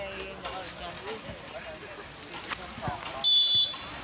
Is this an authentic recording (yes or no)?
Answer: yes